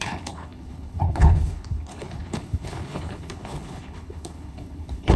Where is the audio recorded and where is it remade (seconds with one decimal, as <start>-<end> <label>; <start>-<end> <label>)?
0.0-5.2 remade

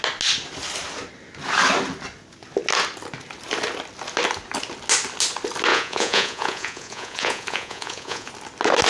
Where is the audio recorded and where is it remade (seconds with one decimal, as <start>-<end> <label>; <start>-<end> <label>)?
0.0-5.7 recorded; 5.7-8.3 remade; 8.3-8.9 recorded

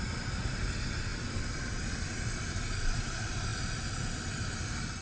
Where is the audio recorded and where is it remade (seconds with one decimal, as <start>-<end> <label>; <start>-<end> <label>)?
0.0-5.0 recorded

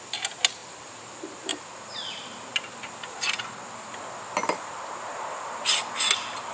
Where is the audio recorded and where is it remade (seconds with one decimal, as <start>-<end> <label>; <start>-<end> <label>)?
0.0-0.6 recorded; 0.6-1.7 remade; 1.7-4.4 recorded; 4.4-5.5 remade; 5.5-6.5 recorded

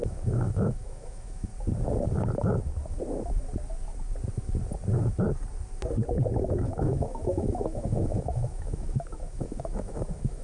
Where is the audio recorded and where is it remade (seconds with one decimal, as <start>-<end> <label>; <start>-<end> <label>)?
0.0-1.5 remade; 1.5-6.4 recorded; 6.4-10.4 remade